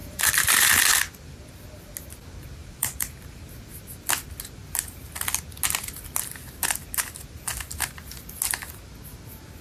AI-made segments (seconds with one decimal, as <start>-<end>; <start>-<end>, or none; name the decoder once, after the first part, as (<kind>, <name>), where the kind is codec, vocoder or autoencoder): 0.0-0.8 (vocoder, BigVGAN v2); 2.6-3.4